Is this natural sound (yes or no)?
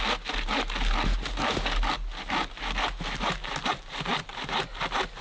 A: yes